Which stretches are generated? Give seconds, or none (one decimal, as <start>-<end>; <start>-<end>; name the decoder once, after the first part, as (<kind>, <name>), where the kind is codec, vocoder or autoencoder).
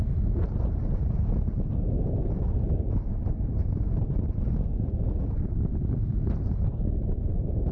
none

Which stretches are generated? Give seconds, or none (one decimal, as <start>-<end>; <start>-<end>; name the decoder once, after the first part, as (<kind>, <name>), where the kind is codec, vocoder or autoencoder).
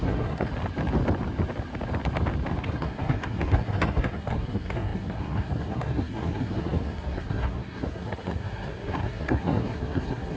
0.0-0.5 (codec, SNAC); 2.6-10.4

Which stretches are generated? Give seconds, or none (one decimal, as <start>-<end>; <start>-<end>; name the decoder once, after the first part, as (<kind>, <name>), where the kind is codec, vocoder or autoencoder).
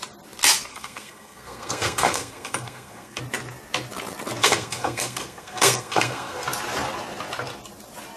0.7-3.2 (codec, SNAC); 4.4-6.4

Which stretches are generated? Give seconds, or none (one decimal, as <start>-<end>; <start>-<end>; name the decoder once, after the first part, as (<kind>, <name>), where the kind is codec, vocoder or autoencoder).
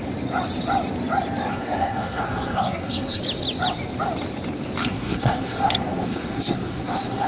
1.5-3.2 (codec, SNAC); 4.8-7.3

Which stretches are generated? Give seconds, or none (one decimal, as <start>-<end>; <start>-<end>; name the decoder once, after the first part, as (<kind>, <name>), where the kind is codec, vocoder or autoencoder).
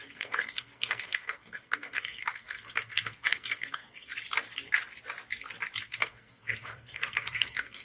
0.0-4.1 (codec, SNAC); 5.8-7.8